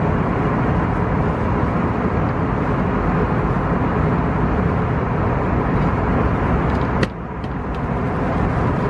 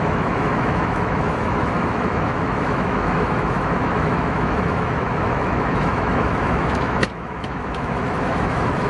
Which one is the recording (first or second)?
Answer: first